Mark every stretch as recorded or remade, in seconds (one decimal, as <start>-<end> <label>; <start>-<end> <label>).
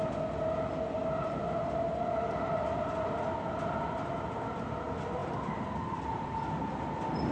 0.0-7.3 recorded